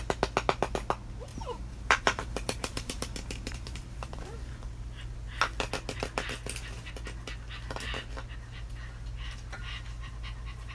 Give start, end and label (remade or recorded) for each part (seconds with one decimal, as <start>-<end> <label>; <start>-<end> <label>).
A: 0.0-1.3 recorded; 1.3-4.7 remade; 4.7-10.7 recorded